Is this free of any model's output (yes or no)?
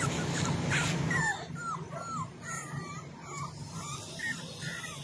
yes